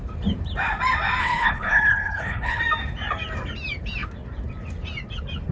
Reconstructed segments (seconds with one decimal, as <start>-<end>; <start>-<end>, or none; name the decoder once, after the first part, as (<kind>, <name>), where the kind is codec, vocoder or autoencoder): 1.2-2.6 (codec, HILCodec)